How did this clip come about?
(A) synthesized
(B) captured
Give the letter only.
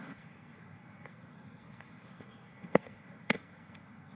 A